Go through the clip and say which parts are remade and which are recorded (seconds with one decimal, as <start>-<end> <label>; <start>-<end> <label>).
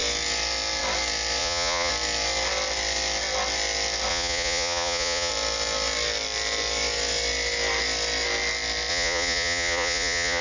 0.0-1.4 recorded; 1.4-1.9 remade; 1.9-4.1 recorded; 4.1-5.3 remade; 5.3-8.9 recorded; 8.9-10.4 remade